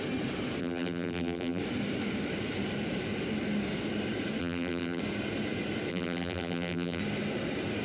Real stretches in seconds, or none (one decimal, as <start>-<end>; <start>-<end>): 0.0-0.6; 1.6-4.4; 5.0-5.9; 7.0-7.8